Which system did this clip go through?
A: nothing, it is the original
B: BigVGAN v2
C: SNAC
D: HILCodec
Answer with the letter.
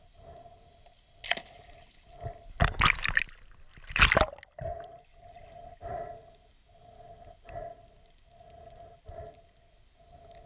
A